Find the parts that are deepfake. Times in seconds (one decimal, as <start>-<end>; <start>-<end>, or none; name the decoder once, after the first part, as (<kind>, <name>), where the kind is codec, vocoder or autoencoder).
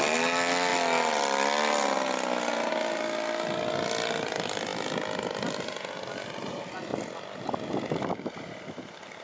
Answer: none